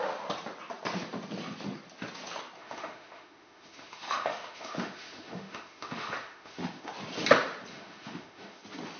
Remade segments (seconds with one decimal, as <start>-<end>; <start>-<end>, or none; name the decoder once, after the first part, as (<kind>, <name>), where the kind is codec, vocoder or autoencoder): 2.6-6.9 (autoencoder, DAC-VAE); 7.7-8.6